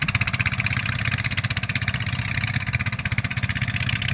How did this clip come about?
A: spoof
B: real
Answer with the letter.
B